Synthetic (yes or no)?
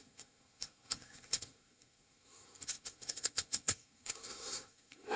yes